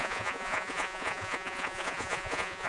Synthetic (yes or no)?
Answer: yes